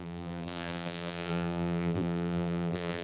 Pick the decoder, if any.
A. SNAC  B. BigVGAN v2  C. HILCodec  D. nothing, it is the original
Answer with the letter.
B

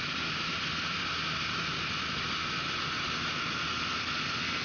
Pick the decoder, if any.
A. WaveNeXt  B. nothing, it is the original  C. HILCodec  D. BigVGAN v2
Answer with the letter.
B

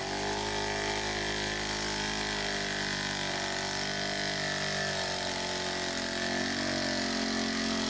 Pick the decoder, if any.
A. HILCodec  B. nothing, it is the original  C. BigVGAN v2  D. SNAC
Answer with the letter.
B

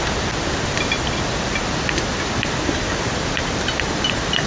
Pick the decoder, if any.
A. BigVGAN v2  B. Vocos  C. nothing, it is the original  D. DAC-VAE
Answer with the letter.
C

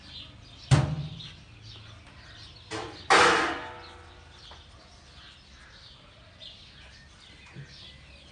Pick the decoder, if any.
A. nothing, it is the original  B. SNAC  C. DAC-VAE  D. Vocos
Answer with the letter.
A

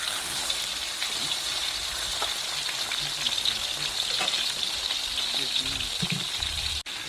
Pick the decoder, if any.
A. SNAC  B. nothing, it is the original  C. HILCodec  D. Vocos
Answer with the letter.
B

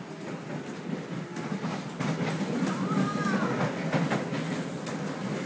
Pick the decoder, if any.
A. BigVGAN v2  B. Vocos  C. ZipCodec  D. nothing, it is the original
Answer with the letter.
D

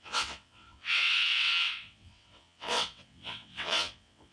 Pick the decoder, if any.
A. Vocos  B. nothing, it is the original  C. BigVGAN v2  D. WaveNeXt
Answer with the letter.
D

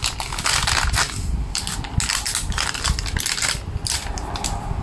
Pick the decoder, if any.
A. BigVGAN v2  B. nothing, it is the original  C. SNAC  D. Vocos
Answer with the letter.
B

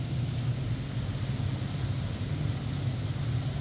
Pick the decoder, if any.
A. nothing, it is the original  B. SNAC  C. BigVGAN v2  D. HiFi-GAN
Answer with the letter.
A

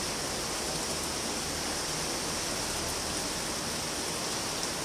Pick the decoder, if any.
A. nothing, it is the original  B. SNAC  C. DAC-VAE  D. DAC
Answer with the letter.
A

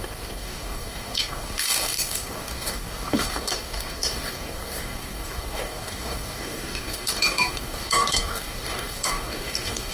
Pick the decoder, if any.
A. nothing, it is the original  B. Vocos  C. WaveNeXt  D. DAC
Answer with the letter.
D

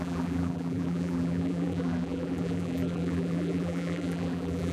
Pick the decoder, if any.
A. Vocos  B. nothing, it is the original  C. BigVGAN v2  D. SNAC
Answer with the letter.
C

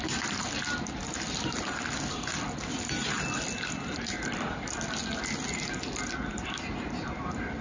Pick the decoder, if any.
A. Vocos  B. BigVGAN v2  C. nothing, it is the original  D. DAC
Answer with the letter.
C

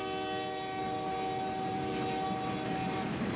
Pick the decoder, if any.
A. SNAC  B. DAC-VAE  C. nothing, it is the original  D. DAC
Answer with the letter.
C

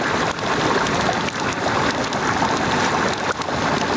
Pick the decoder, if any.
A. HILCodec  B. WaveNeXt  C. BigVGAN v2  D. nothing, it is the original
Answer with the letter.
D